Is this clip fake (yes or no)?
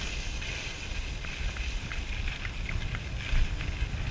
no